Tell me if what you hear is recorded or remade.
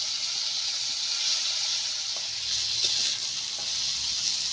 recorded